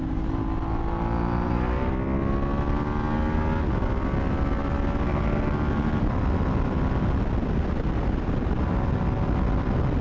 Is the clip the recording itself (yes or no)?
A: yes